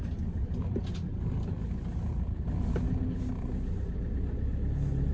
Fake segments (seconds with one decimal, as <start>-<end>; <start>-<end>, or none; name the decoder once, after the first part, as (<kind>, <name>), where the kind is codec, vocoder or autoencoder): none

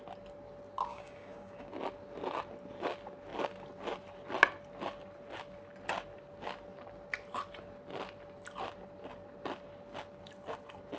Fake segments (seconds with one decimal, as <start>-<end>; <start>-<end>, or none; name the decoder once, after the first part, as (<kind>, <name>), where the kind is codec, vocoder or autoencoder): 0.9-1.7 (codec, DAC)

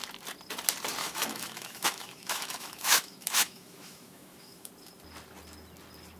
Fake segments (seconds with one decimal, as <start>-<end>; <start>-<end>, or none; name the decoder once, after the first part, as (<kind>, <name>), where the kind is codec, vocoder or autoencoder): 1.0-4.7 (autoencoder, DAC-VAE)

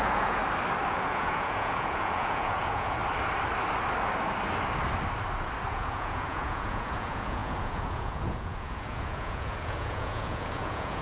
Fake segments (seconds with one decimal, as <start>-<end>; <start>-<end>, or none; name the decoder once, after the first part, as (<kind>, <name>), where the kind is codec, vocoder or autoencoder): 0.0-0.4 (vocoder, Vocos); 0.9-3.0; 5.7-11.0

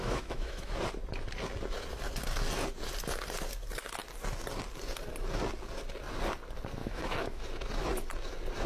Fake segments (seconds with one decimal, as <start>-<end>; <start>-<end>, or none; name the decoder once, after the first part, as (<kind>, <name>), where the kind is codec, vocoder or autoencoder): 0.0-0.7 (autoencoder, DAC-VAE); 6.8-7.4